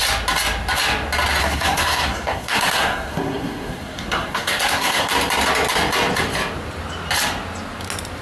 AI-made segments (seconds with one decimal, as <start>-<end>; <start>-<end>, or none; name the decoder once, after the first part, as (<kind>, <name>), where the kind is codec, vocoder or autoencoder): 1.4-5.1 (codec, SNAC)